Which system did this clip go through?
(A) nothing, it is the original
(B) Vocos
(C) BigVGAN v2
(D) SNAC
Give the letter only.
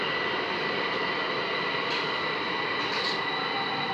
C